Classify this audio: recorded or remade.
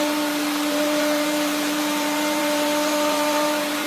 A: remade